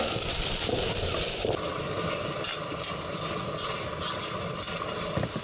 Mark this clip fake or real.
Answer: real